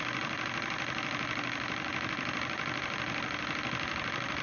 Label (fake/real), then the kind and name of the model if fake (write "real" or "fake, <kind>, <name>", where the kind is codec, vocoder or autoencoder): fake, vocoder, BigVGAN v2